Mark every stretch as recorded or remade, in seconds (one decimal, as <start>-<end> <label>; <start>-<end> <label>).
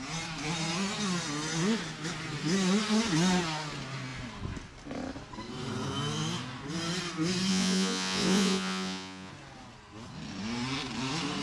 0.0-7.5 recorded; 7.5-9.3 remade; 9.3-11.4 recorded